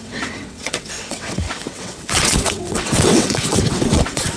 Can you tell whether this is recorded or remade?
remade